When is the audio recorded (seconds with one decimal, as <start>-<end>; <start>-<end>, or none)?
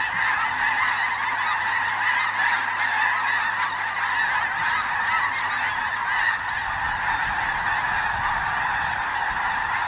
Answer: 0.0-9.9